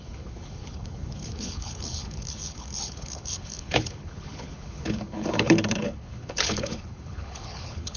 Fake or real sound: fake